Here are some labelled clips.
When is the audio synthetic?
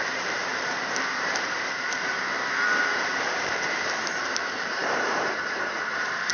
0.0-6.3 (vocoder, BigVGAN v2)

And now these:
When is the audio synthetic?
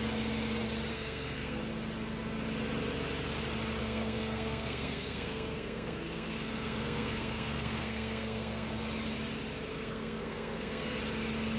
0.9-1.6 (codec, SNAC); 3.8-8.7; 9.7-11.0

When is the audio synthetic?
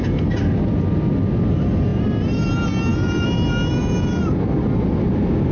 none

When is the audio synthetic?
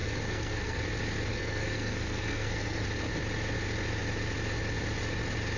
0.0-0.8 (codec, SNAC); 1.3-2.8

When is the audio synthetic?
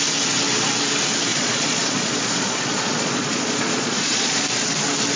1.3-4.4 (vocoder, Vocos)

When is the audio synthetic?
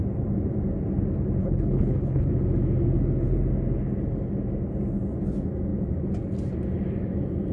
1.4-2.3 (codec, HILCodec)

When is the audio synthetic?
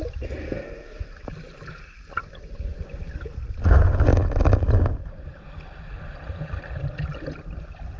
0.4-1.1 (codec, SNAC)